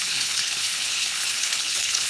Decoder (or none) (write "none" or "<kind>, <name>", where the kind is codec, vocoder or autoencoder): codec, HILCodec